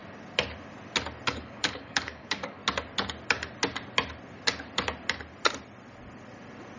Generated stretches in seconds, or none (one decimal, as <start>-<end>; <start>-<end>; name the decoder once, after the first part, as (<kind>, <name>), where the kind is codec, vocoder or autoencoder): 1.3-2.6 (codec, DAC)